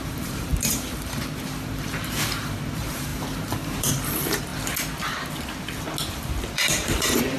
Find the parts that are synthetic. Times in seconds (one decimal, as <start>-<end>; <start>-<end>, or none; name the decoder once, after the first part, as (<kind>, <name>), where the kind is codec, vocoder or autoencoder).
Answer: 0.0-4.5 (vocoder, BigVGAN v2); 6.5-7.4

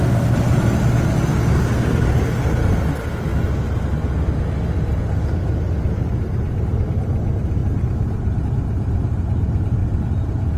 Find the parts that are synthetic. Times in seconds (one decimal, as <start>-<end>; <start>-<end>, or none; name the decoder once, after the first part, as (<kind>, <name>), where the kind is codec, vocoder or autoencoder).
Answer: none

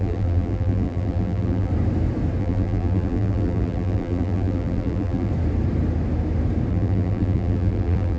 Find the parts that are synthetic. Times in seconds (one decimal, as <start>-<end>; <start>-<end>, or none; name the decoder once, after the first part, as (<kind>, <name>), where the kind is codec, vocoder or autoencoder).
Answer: 0.0-1.7 (vocoder, BigVGAN v2); 2.4-5.3; 6.7-8.2